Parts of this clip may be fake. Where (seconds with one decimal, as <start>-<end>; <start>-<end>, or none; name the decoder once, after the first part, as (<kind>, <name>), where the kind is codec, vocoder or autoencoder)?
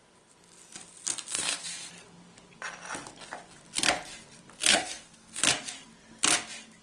1.3-1.9 (codec, SNAC); 4.7-5.4